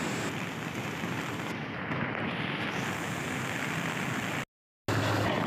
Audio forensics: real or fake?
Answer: real